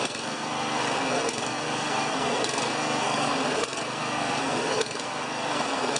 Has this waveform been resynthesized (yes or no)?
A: yes